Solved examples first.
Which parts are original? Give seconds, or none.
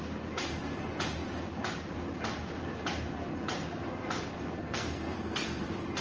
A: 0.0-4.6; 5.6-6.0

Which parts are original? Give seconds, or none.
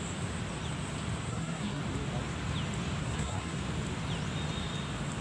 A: 0.0-1.3; 1.8-3.0; 3.6-5.2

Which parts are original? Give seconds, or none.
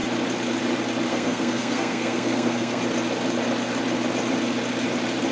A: 0.0-1.1; 2.8-5.3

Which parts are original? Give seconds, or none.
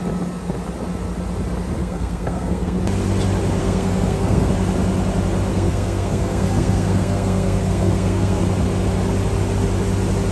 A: 0.0-1.8; 2.8-3.6; 4.5-5.5; 8.4-10.3